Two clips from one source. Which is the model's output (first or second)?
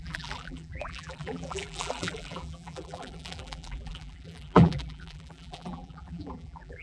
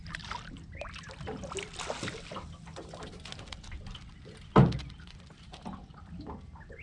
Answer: first